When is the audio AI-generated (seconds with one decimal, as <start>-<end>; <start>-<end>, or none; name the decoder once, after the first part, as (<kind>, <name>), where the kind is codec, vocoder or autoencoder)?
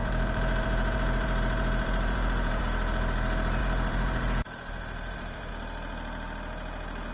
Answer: 0.0-2.6 (vocoder, BigVGAN v2); 3.6-5.5